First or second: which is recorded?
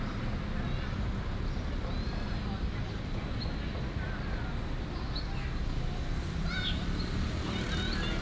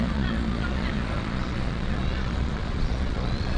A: first